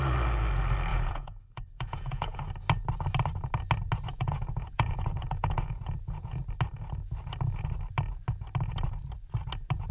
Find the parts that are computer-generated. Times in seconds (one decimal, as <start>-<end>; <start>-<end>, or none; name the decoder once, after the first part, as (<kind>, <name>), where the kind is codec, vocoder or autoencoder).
0.9-2.4 (vocoder, Vocos); 4.1-6.4